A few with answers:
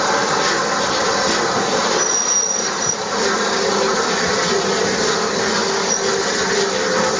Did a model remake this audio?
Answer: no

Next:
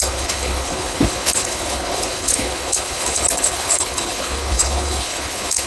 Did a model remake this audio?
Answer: yes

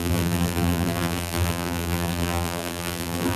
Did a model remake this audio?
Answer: yes